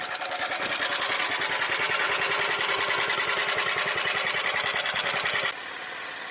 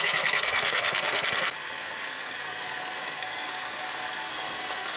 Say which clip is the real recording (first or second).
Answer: first